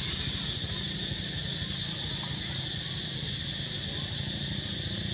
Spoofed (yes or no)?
no